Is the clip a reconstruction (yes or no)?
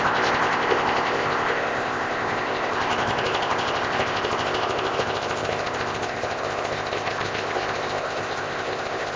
yes